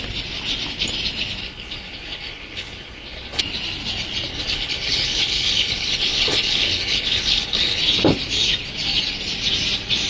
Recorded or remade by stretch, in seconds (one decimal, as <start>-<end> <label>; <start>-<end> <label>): 0.0-1.4 recorded; 1.4-3.4 remade; 3.4-4.3 recorded; 4.3-7.8 remade; 7.8-10.1 recorded